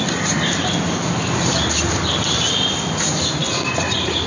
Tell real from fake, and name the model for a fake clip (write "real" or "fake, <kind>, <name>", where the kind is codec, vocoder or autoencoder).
fake, vocoder, BigVGAN v2